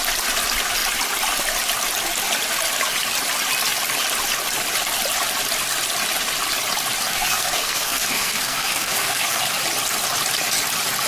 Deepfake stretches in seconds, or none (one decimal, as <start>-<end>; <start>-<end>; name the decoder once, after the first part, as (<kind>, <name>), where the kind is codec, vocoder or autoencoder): 7.1-9.4 (codec, SNAC)